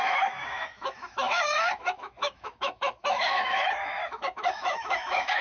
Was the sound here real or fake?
fake